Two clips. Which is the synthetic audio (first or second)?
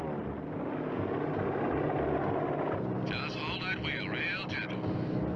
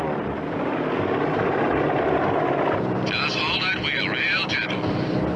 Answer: second